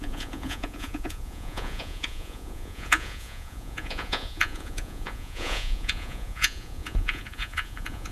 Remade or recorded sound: remade